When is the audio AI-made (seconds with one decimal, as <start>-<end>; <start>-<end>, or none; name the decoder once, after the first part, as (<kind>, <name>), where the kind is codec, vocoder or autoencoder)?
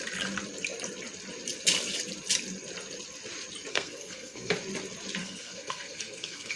3.7-4.5 (codec, SNAC); 5.2-6.6